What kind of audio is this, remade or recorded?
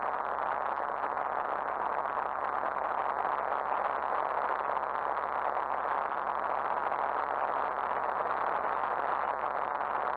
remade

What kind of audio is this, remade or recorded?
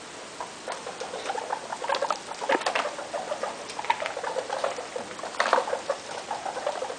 recorded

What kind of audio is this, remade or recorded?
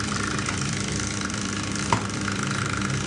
remade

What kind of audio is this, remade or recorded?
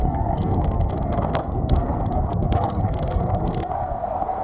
remade